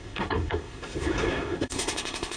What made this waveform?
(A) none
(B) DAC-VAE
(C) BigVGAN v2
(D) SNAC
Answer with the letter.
D